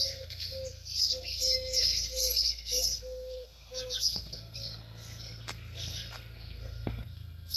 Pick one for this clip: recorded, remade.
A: remade